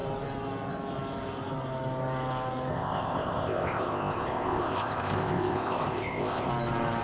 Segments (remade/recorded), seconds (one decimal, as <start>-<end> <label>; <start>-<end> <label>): 0.0-2.7 recorded; 2.7-6.5 remade; 6.5-7.0 recorded